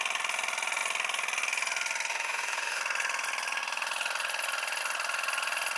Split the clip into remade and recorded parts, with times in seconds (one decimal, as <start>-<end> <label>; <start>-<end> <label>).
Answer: 0.0-2.1 recorded; 2.1-2.8 remade; 2.8-5.8 recorded